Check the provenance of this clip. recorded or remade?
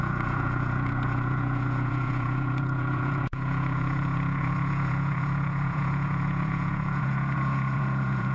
remade